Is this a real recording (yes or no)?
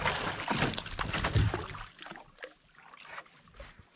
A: yes